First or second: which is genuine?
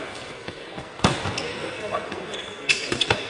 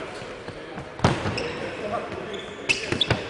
second